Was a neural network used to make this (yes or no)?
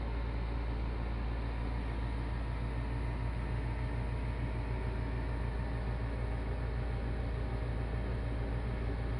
no